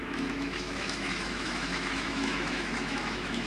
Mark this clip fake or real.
fake